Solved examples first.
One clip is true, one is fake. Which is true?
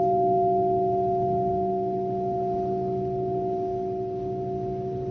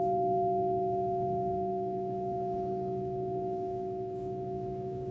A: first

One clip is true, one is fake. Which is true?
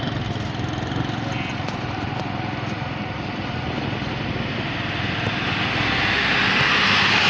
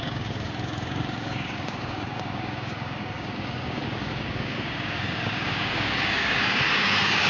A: first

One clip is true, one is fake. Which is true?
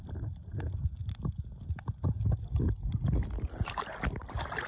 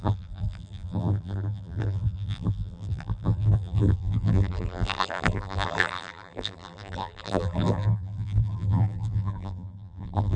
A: first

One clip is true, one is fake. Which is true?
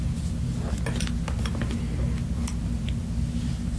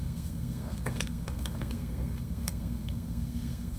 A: first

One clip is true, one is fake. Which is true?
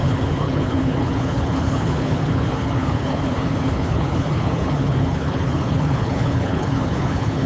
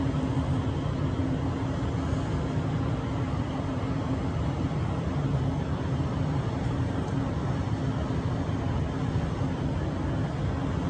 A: second